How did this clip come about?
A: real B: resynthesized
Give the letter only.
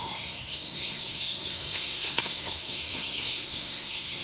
B